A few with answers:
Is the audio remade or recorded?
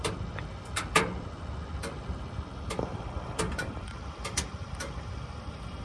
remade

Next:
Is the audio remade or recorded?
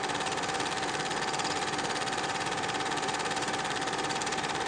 remade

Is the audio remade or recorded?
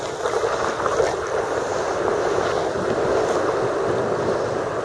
recorded